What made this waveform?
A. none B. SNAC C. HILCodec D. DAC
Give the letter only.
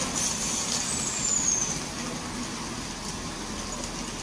A